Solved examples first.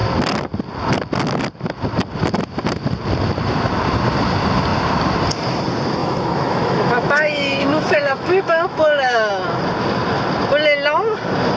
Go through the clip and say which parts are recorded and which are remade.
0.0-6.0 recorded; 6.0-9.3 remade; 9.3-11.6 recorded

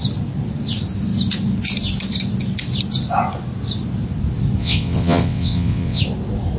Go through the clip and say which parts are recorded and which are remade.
0.0-4.6 recorded; 4.6-6.0 remade; 6.0-6.6 recorded

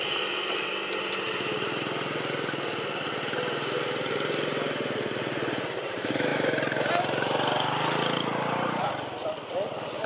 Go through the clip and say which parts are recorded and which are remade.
0.0-10.1 recorded

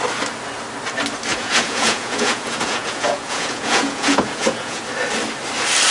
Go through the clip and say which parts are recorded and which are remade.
0.0-1.3 recorded; 1.3-4.8 remade; 4.8-5.9 recorded

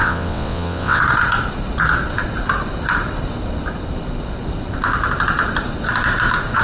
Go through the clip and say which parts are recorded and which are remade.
0.0-1.0 remade; 1.0-6.6 recorded